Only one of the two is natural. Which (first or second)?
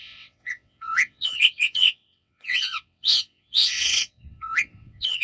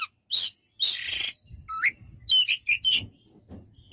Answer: second